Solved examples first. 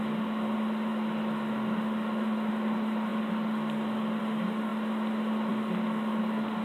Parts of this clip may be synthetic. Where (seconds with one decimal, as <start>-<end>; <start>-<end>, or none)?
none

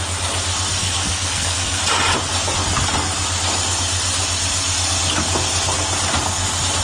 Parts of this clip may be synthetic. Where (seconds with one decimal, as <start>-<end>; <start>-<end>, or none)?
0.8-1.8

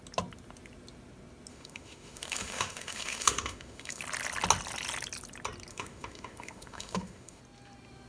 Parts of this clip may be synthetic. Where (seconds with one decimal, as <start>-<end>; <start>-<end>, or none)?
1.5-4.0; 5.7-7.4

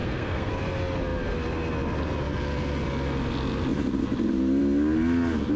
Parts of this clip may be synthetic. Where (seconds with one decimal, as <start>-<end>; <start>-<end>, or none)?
0.0-0.5

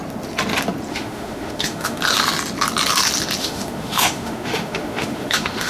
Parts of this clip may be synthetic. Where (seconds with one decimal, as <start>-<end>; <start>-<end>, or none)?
0.9-2.0; 3.4-5.7